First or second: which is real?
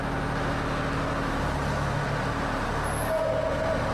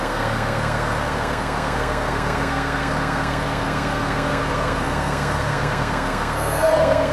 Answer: first